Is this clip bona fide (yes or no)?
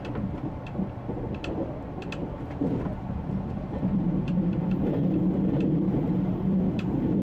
no